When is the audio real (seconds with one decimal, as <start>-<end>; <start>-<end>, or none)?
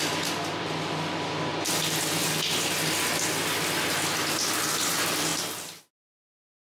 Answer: 0.0-6.6